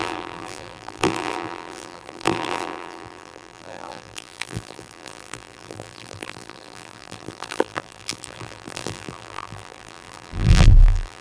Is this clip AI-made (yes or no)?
yes